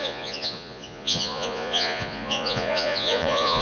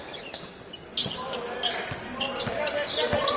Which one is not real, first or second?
first